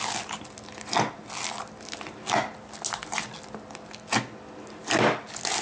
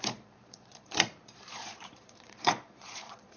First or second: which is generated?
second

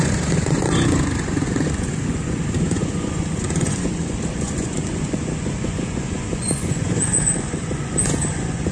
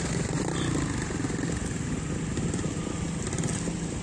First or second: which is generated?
first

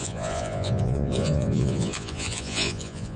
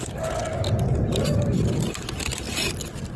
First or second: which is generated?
first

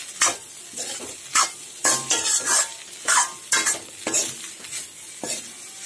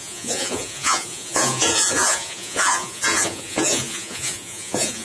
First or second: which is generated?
second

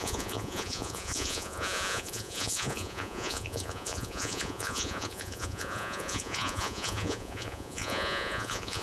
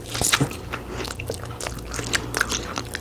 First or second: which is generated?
first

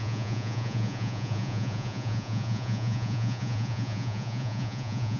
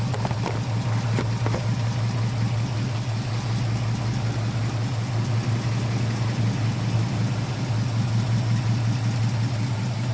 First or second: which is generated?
first